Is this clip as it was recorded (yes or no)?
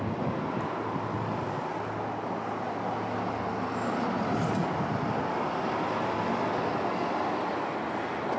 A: yes